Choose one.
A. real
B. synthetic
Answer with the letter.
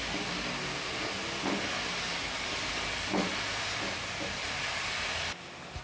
A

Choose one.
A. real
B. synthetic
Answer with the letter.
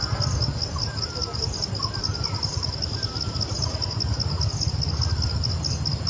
A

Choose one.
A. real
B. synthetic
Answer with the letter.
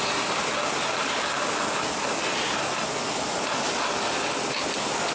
A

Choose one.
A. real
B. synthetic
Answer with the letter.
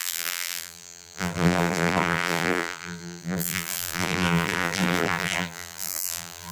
B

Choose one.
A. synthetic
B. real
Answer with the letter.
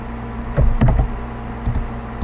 B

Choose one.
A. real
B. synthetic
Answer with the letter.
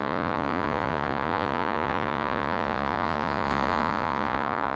B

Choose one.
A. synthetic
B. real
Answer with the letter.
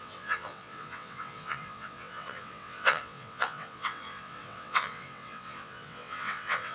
A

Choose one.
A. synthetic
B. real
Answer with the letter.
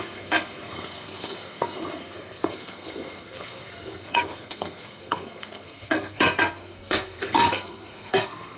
A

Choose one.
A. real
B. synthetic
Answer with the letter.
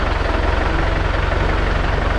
A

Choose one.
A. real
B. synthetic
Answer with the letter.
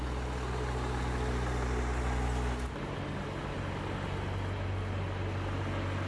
A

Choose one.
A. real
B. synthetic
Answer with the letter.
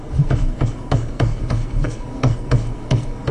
B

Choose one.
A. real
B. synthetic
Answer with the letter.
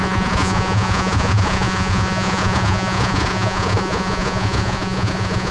B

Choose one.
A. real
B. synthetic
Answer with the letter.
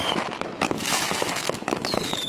B